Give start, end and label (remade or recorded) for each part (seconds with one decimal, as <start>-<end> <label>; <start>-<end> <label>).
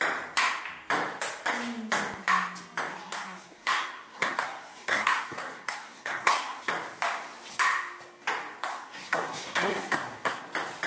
0.0-2.9 recorded; 2.9-6.7 remade; 6.7-8.8 recorded; 8.8-10.5 remade; 10.5-10.9 recorded